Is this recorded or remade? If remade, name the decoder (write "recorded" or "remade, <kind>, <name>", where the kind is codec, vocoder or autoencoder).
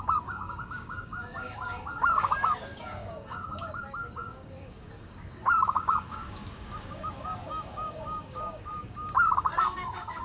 remade, codec, DAC